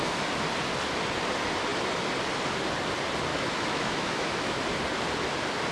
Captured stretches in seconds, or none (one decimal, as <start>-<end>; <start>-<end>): 0.0-3.3; 4.6-5.7